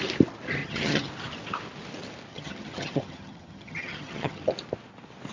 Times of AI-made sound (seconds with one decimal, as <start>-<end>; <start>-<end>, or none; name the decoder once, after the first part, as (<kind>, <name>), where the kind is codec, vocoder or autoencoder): 0.6-1.1 (vocoder, HiFi-GAN); 2.3-4.5